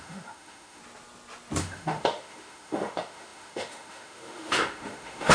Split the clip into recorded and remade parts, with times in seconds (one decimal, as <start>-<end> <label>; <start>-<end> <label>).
0.0-0.8 remade; 0.8-1.6 recorded; 1.6-5.3 remade